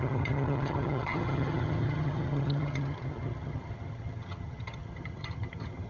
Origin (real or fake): fake